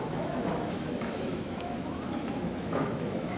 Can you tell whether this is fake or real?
fake